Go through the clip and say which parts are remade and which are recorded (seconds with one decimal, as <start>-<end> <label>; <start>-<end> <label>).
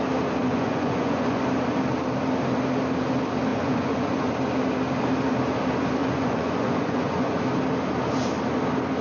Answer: 0.0-0.4 recorded; 0.4-1.4 remade; 1.4-3.5 recorded; 3.5-4.3 remade; 4.3-6.0 recorded; 6.0-7.4 remade; 7.4-9.0 recorded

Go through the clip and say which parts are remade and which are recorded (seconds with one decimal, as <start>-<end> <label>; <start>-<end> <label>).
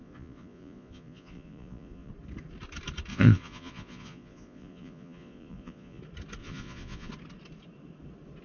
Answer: 0.0-2.1 remade; 2.1-3.1 recorded; 3.1-6.0 remade; 6.0-6.4 recorded; 6.4-7.1 remade; 7.1-8.4 recorded